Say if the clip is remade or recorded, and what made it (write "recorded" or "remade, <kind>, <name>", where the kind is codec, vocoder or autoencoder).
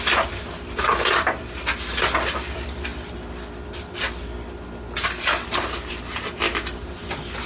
recorded